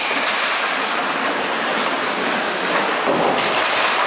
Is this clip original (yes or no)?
no